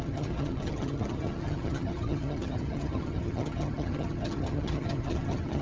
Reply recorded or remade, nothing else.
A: remade